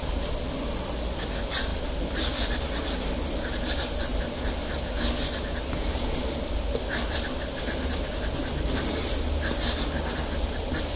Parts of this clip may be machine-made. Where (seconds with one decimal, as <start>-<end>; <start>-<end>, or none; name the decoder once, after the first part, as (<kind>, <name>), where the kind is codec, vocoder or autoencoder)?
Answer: none